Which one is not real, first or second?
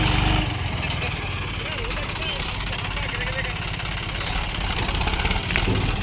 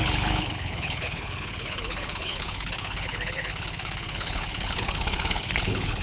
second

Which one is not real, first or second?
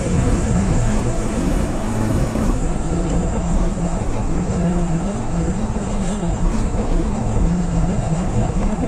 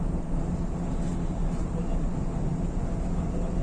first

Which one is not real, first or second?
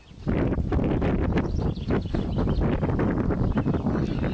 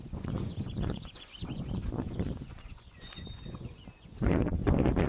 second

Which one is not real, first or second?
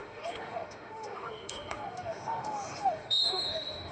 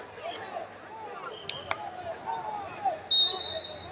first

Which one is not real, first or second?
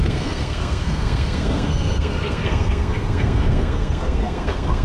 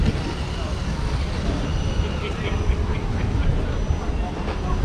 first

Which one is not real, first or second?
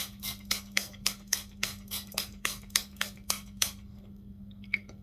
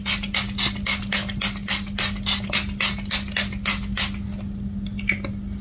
first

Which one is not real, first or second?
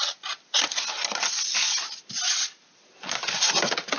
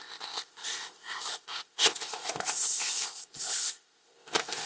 second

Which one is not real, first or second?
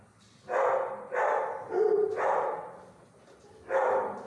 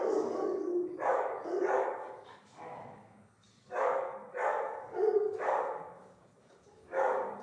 second